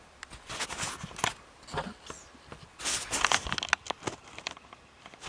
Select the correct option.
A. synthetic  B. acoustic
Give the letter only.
B